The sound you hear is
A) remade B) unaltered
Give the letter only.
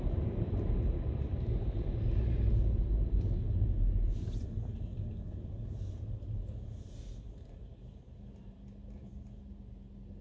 B